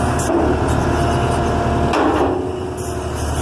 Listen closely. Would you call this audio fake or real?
real